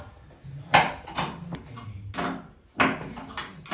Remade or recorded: recorded